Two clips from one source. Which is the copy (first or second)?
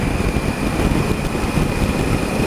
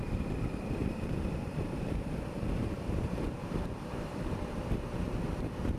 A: second